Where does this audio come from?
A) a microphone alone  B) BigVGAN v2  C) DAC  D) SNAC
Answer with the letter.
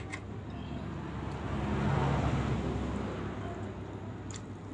A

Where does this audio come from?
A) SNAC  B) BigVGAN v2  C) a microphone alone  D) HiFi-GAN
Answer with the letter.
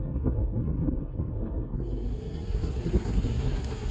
A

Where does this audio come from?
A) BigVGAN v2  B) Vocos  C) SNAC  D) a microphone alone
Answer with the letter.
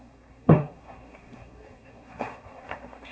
C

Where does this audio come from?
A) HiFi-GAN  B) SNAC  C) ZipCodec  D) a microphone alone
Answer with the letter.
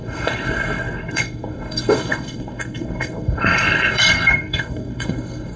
B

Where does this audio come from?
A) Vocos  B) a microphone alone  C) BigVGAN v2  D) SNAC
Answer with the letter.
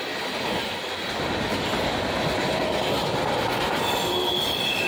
B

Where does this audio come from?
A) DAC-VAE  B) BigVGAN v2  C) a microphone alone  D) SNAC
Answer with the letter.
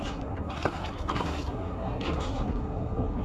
D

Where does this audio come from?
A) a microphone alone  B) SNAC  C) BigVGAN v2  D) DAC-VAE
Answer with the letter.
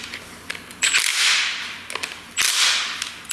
A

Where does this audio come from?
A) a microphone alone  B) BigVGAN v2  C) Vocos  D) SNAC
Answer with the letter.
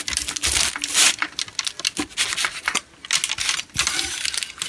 A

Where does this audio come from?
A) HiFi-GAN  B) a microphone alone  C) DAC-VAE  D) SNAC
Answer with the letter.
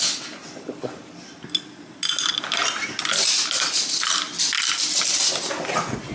B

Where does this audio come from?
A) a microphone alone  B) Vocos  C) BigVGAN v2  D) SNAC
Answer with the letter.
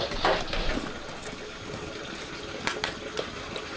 A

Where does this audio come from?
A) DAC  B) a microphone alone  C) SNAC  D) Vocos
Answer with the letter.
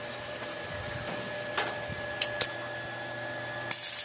B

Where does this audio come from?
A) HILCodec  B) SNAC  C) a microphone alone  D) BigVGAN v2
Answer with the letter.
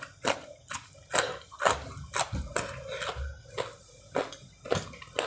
C